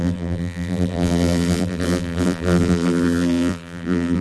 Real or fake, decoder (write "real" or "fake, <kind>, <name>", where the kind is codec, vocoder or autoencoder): fake, vocoder, BigVGAN v2